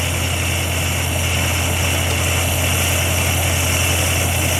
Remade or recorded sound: recorded